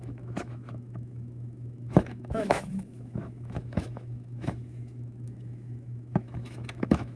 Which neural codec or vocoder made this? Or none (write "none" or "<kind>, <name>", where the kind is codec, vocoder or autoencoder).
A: autoencoder, DAC-VAE